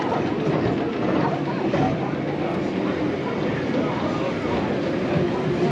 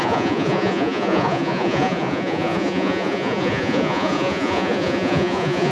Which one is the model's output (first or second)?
second